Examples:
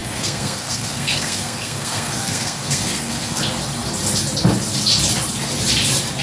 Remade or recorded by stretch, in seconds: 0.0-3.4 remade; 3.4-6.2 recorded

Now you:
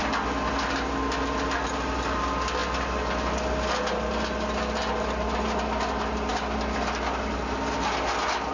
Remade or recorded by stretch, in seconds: 0.0-8.5 recorded

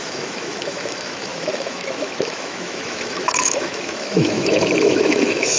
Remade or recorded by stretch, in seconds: 0.0-5.6 remade

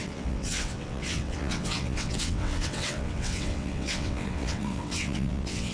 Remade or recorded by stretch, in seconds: 0.0-5.7 remade